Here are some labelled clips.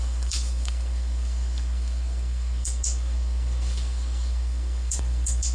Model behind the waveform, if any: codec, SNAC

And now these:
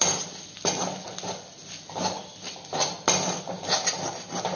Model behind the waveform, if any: none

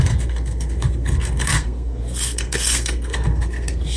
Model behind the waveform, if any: codec, SNAC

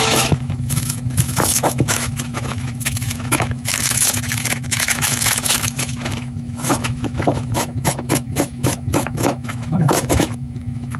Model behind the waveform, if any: autoencoder, DAC-VAE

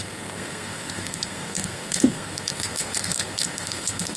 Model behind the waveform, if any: codec, SNAC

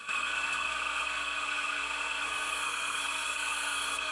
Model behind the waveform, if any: codec, SNAC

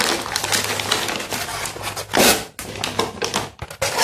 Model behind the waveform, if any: none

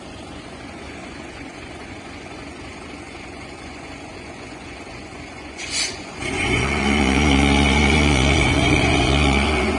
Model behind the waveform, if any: vocoder, Vocos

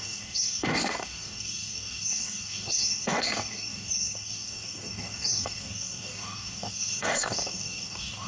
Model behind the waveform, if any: codec, DAC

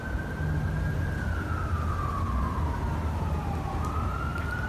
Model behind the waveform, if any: none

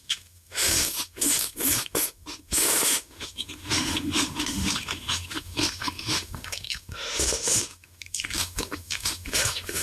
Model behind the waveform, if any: autoencoder, DAC-VAE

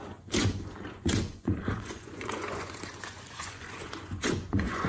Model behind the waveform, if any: vocoder, Vocos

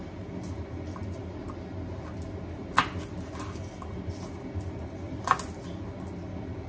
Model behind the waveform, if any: none